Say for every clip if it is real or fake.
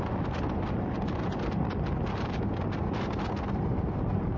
real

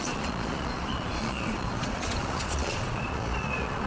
fake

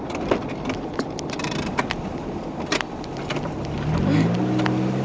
real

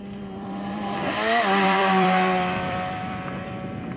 fake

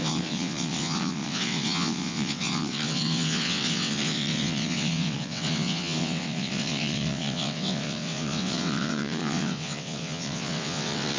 fake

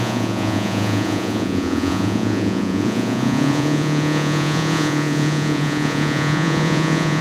fake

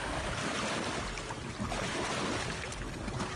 real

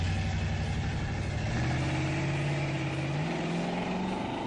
real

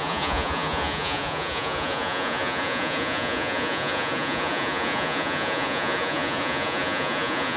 fake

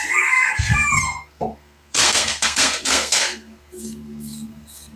fake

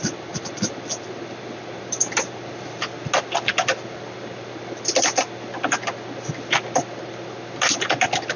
real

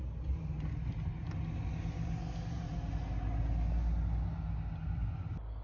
real